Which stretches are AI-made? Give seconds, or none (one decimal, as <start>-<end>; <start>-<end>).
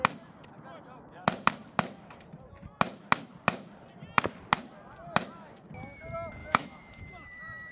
6.4-7.1